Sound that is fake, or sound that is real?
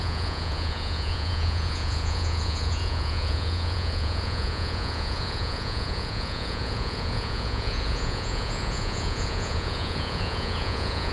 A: fake